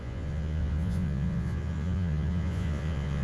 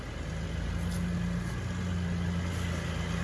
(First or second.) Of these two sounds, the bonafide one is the second